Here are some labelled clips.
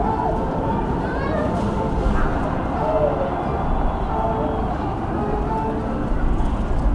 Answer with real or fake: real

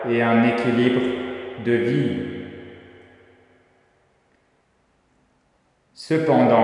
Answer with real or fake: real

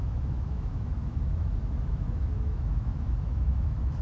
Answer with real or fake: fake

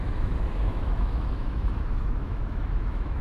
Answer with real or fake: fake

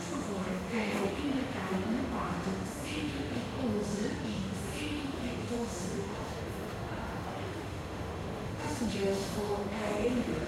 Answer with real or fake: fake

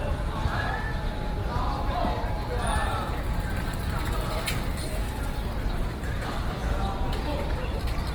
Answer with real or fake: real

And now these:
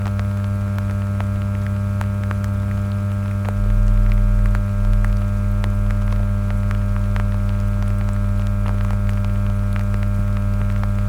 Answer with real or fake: real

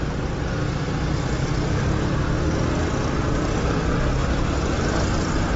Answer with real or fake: real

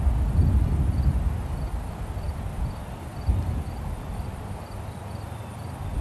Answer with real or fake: real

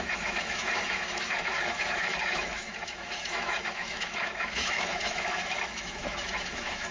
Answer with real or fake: fake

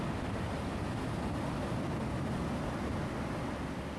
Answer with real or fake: real